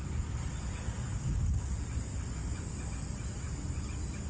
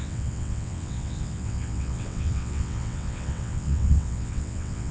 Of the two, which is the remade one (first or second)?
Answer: second